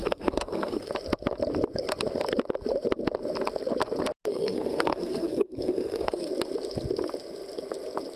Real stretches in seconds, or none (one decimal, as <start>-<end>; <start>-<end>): 0.9-4.3; 6.3-8.2